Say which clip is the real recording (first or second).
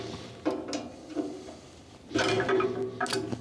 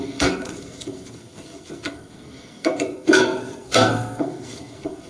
first